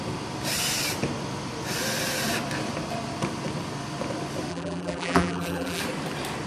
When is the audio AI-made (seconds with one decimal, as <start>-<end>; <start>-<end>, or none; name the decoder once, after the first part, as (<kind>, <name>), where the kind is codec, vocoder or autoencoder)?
4.5-5.8 (vocoder, BigVGAN v2)